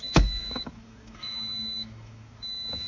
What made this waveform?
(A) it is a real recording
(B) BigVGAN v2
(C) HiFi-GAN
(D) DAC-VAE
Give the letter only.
D